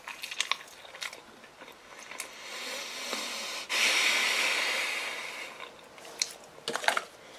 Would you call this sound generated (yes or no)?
no